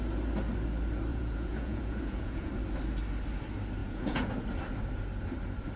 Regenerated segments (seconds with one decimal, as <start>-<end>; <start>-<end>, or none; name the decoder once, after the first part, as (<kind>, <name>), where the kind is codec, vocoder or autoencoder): 1.1-2.5 (vocoder, Vocos); 3.8-4.4